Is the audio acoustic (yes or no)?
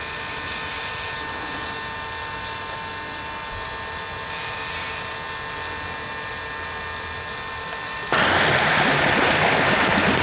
yes